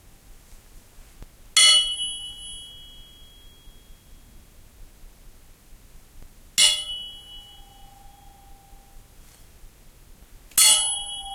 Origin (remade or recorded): recorded